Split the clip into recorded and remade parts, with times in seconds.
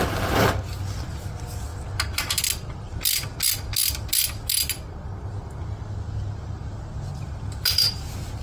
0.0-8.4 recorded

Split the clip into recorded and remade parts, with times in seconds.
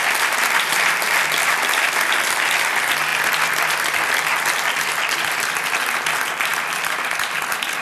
0.0-7.8 recorded